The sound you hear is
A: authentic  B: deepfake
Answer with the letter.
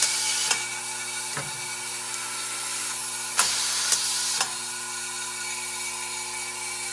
A